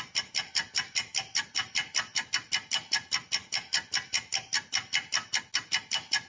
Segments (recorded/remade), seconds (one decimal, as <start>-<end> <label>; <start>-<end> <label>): 0.0-6.3 recorded